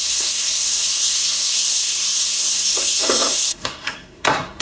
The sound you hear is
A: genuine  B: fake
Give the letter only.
B